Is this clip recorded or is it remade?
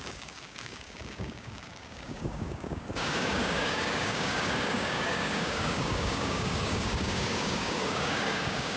remade